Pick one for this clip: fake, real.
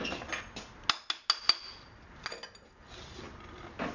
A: real